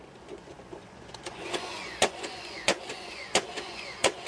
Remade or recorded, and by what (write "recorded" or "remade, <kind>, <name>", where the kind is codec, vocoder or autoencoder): remade, vocoder, Vocos